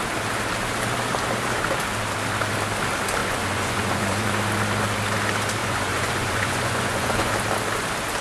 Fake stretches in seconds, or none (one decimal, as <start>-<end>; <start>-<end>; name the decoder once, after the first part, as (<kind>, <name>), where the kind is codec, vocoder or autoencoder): 3.2-4.3 (vocoder, Vocos); 5.6-7.3